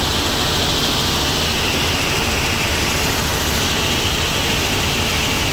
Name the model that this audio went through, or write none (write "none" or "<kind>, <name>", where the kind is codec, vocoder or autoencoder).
none